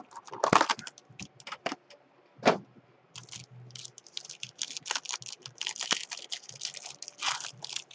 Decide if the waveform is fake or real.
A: real